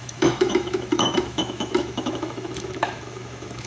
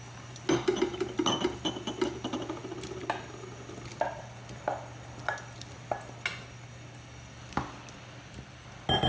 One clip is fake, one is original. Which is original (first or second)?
second